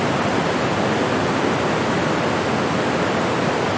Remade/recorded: recorded